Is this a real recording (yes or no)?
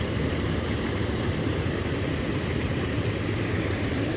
no